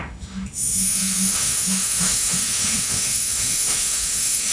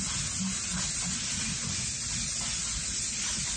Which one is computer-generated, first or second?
first